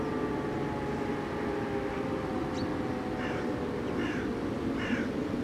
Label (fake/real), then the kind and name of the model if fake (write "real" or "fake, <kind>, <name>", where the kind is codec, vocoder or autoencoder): real